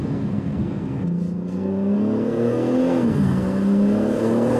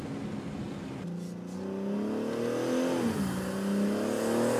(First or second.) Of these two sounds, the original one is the second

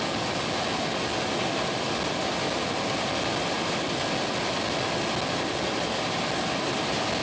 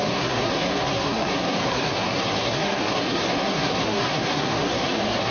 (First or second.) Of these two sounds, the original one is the first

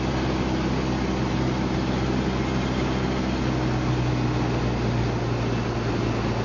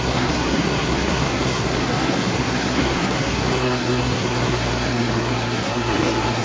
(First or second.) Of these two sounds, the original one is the first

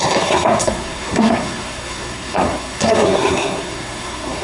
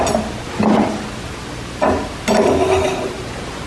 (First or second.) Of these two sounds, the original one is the second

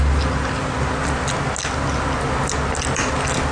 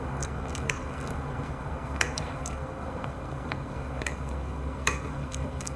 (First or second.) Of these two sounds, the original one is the first